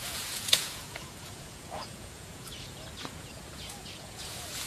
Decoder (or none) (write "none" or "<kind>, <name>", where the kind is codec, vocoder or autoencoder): vocoder, Vocos